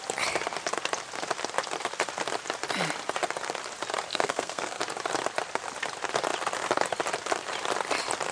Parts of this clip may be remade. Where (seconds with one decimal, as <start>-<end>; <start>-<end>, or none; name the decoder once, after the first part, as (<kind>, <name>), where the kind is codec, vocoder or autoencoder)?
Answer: 4.1-4.8 (codec, SNAC)